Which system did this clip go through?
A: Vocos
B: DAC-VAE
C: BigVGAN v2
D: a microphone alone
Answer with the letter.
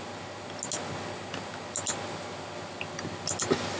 D